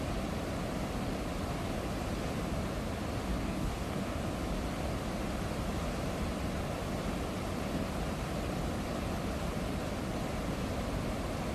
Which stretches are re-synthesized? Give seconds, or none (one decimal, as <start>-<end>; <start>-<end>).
3.3-4.2